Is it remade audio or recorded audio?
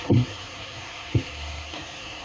remade